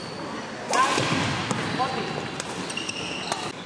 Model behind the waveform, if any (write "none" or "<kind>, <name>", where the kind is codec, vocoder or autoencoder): none